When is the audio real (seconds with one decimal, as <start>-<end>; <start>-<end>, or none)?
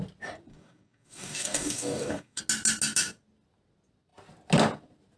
0.0-0.5; 2.4-5.2